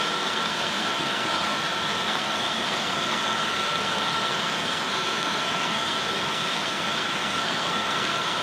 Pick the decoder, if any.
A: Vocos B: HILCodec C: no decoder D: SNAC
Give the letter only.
D